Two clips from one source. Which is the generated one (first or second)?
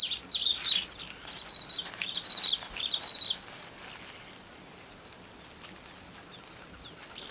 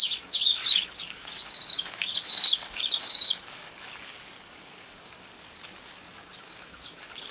second